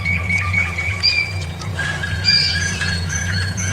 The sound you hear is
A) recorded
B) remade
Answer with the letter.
B